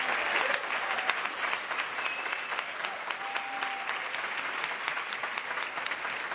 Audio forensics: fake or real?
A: real